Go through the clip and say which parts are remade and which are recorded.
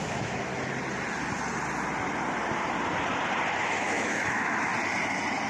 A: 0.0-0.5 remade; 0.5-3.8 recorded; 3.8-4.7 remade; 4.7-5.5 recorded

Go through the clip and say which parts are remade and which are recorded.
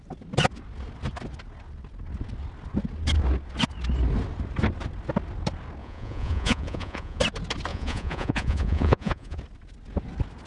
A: 0.0-5.8 recorded; 5.8-7.2 remade; 7.2-7.7 recorded; 7.7-9.4 remade; 9.4-10.5 recorded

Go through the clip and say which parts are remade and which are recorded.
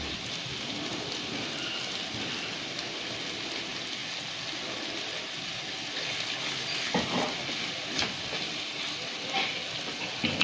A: 0.0-10.4 recorded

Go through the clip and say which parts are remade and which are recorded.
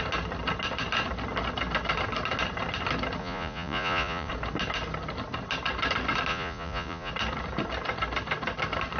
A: 0.0-3.2 recorded; 3.2-4.3 remade; 4.3-6.3 recorded; 6.3-7.1 remade; 7.1-9.0 recorded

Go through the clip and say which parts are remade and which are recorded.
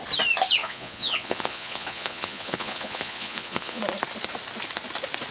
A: 0.0-0.6 recorded; 0.6-3.8 remade; 3.8-5.3 recorded